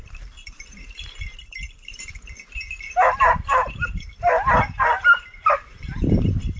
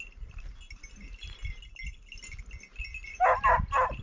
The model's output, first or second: first